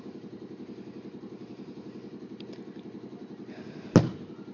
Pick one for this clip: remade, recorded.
recorded